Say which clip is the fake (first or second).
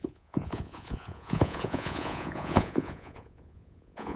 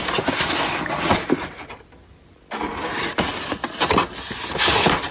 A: first